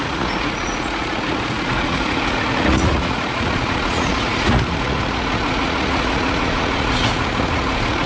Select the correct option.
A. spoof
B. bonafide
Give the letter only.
A